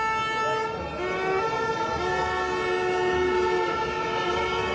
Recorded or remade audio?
recorded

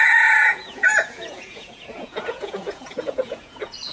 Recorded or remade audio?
remade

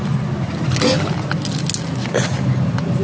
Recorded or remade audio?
recorded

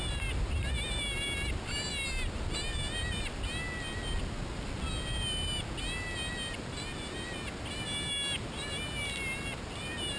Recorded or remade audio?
recorded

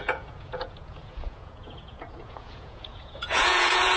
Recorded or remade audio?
remade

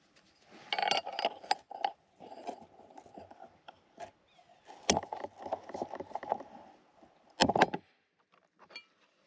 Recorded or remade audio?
recorded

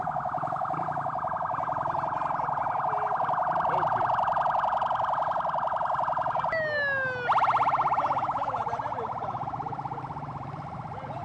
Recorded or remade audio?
recorded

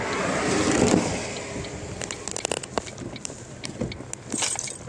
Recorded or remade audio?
recorded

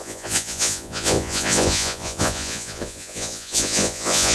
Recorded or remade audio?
remade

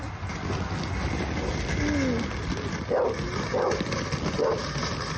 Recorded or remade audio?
recorded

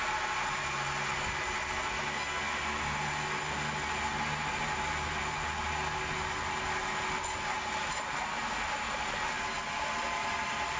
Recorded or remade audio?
recorded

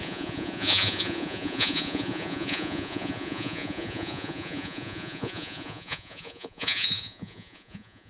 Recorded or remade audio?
remade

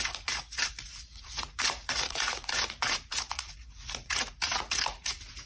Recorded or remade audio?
remade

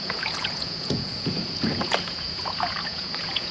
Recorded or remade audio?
remade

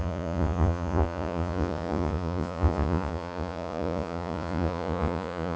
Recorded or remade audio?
remade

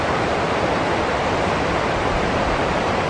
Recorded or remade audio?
recorded